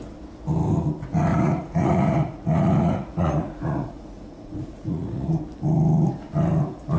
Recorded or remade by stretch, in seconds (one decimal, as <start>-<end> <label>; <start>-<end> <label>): 0.0-1.3 recorded; 1.3-5.4 remade; 5.4-7.0 recorded